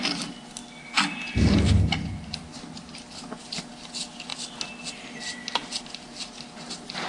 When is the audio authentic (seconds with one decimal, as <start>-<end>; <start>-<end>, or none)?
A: 0.0-7.1